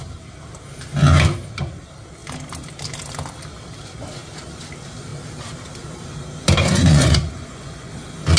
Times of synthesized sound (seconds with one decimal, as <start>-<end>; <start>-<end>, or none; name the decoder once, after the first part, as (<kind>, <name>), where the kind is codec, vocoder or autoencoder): 6.6-7.9 (vocoder, Vocos)

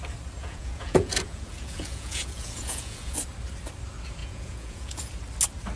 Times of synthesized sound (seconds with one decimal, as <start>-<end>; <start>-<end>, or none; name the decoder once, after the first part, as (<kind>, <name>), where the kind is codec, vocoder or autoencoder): 0.4-3.2 (vocoder, Vocos); 4.2-5.1

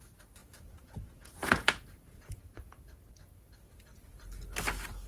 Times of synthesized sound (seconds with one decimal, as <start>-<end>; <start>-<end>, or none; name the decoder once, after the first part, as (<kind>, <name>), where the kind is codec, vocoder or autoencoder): 0.4-3.1 (vocoder, Vocos)

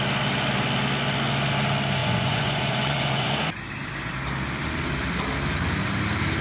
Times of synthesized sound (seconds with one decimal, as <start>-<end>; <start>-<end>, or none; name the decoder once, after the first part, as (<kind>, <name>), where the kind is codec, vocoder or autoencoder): 2.0-3.3 (vocoder, Vocos)

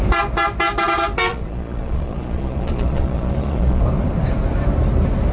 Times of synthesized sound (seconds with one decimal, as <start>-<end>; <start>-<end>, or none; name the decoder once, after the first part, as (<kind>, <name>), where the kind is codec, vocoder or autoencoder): 1.3-3.8 (vocoder, Vocos)

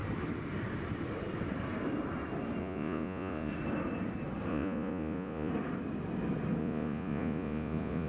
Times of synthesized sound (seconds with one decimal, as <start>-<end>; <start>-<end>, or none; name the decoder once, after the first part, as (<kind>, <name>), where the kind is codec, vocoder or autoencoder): 2.6-3.5 (vocoder, Vocos); 4.5-5.5; 6.6-8.1

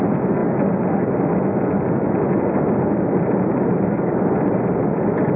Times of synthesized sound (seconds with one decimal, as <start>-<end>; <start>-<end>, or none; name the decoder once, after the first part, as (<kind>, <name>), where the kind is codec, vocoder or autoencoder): none